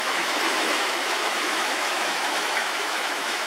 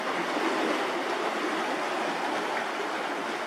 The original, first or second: second